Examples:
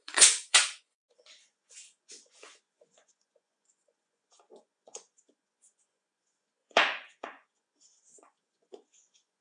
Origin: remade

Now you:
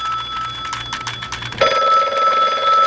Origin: recorded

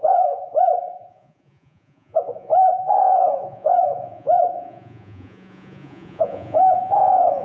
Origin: remade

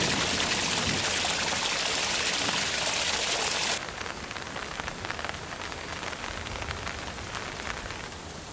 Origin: recorded